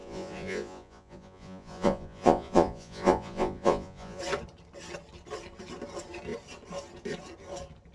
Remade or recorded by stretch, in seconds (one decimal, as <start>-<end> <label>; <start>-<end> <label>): 0.0-4.2 remade; 4.2-7.9 recorded

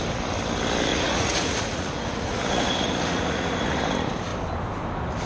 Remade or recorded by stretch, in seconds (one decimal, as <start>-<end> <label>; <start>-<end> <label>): 0.0-0.9 recorded; 0.9-3.8 remade; 3.8-5.3 recorded

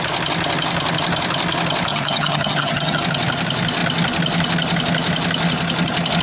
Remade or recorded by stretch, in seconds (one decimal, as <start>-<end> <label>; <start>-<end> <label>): 0.0-1.9 recorded; 1.9-3.0 remade; 3.0-6.2 recorded